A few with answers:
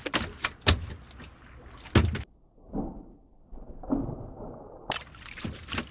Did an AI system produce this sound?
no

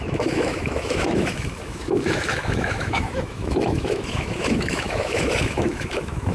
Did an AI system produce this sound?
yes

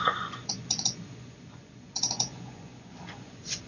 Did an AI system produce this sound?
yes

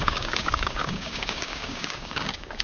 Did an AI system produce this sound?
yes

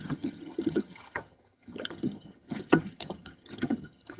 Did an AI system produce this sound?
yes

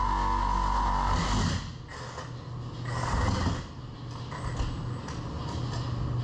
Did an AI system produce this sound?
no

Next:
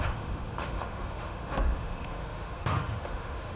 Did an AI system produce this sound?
yes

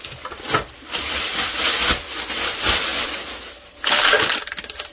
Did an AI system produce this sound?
no